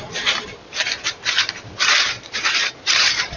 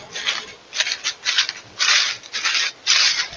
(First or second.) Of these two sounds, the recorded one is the second